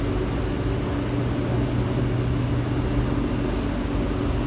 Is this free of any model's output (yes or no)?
yes